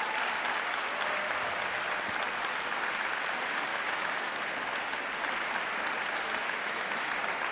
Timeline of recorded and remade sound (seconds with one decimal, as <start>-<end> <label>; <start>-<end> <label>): 0.0-3.7 recorded; 3.7-4.4 remade; 4.4-6.4 recorded; 6.4-7.1 remade; 7.1-7.5 recorded